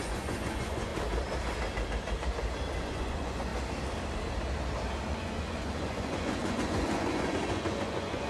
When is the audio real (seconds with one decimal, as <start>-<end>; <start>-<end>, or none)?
0.9-2.8; 3.5-5.1